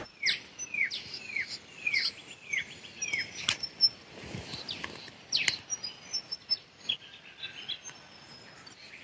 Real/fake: real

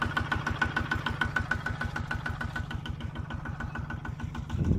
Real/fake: real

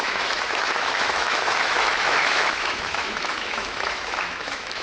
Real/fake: fake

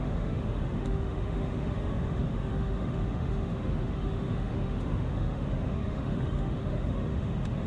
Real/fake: fake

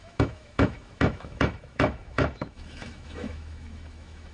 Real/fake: fake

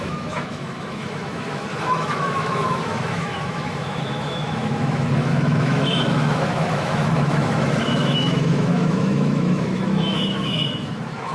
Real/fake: fake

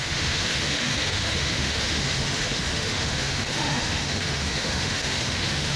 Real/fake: fake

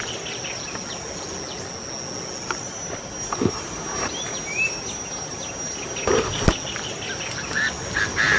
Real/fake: real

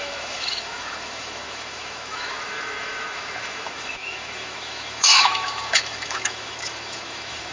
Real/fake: fake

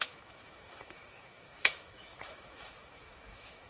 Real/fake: fake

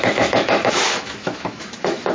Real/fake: fake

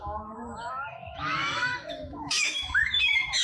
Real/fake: fake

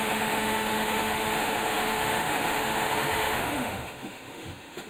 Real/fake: fake